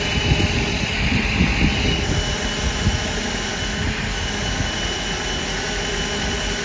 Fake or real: real